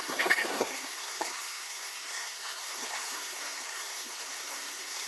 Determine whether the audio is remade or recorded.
remade